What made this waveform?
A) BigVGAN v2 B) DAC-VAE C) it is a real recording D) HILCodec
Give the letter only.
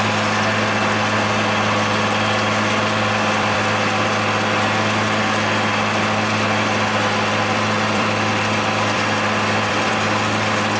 A